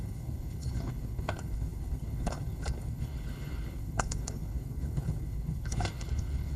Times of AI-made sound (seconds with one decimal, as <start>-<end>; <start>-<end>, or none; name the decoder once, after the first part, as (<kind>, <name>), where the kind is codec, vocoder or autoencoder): 0.0-6.6 (codec, HILCodec)